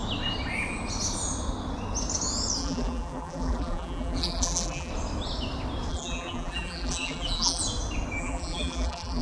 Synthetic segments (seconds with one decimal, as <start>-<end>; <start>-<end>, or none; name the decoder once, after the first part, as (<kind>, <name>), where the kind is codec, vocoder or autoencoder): 2.6-4.9 (vocoder, BigVGAN v2); 5.9-7.6; 8.2-9.2